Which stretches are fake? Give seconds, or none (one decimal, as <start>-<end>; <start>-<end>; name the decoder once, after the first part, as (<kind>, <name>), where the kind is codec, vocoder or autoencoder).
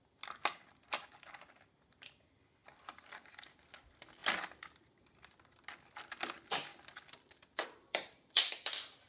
2.6-3.4 (vocoder, BigVGAN v2); 6.7-8.5